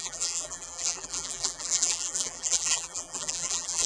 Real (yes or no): no